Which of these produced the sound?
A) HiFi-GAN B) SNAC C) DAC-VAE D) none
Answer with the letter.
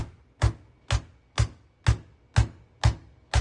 D